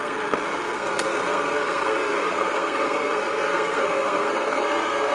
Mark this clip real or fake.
fake